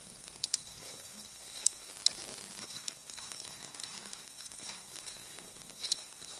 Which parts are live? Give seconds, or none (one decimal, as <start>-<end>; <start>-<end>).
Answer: 1.9-2.6